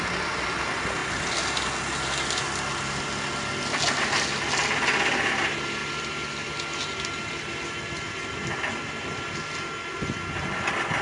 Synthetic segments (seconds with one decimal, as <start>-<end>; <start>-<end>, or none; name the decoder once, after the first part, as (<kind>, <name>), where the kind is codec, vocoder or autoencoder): none